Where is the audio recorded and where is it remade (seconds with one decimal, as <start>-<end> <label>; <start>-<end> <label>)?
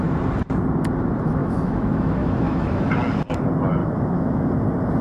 0.0-1.4 recorded; 1.4-2.9 remade; 2.9-3.8 recorded; 3.8-4.5 remade; 4.5-5.0 recorded